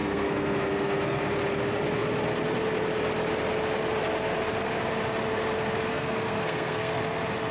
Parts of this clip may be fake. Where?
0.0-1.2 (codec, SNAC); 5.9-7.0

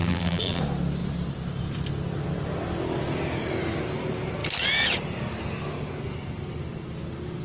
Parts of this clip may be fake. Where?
0.0-0.6 (vocoder, BigVGAN v2)

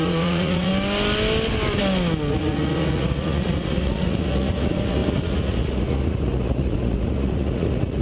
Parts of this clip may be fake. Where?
0.0-0.7 (vocoder, Vocos); 2.3-8.0

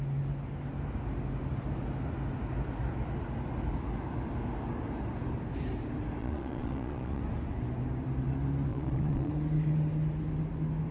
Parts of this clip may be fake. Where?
6.2-7.2 (vocoder, Vocos); 8.7-9.3